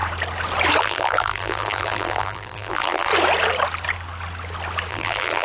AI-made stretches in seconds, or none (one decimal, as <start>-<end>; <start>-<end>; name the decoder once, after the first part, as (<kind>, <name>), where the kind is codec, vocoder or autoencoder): 0.8-3.1 (vocoder, BigVGAN v2); 4.9-5.4